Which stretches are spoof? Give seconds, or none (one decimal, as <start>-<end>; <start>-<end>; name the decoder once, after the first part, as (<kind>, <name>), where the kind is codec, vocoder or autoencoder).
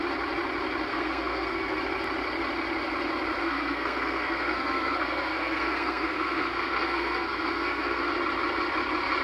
0.9-1.8 (codec, SNAC); 3.4-8.1